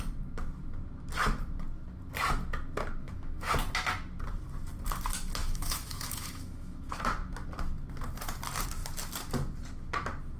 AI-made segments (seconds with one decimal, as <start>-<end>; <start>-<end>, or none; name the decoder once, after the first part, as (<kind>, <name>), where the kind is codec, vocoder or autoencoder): 3.0-3.5 (autoencoder, DAC-VAE); 5.4-7.0